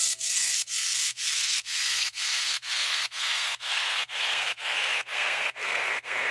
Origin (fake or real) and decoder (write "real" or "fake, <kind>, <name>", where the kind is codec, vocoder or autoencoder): fake, codec, SNAC